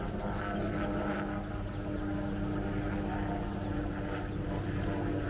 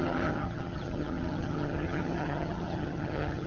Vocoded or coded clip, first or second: second